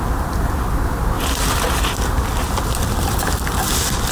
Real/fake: real